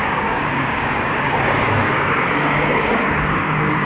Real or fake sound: fake